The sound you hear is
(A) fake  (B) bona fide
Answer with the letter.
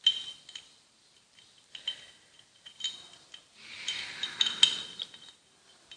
B